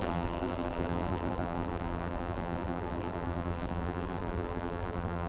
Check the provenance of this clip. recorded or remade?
remade